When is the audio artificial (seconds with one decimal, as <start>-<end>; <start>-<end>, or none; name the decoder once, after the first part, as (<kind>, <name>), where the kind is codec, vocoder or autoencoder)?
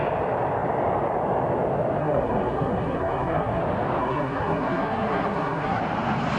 2.0-3.6 (codec, SNAC); 4.0-5.8